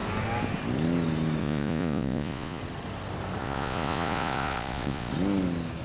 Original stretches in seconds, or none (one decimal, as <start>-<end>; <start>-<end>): 0.0-1.4; 2.6-3.4; 5.1-5.8